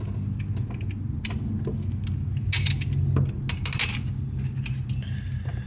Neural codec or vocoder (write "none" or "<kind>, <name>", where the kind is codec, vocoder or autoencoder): none